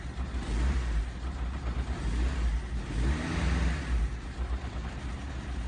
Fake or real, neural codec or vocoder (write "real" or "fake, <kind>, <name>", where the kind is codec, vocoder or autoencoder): real